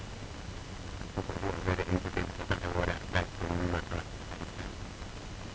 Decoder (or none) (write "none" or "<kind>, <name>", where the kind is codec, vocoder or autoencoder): none